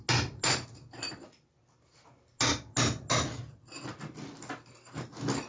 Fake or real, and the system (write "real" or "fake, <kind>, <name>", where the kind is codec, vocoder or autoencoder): real